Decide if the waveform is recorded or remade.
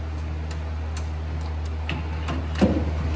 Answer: recorded